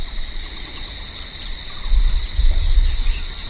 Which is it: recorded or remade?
recorded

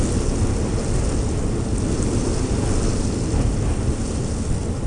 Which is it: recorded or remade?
recorded